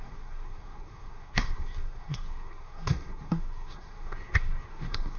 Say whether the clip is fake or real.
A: fake